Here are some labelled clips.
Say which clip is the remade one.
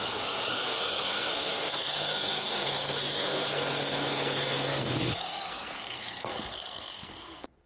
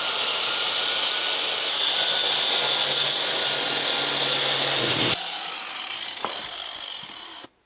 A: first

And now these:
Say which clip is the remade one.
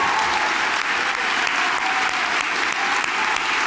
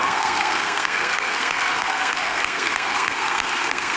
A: second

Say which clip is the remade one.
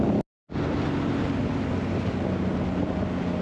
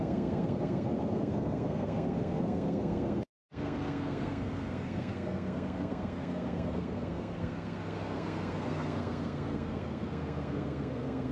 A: second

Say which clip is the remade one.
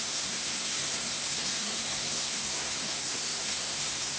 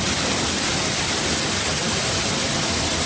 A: first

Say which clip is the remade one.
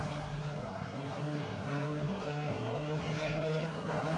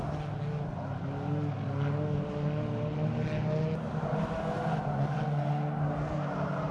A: first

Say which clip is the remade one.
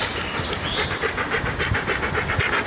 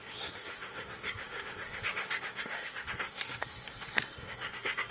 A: second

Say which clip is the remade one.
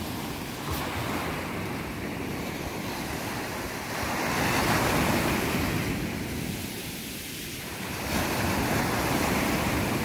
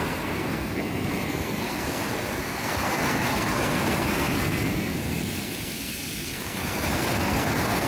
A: second